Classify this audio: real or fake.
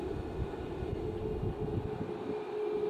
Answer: real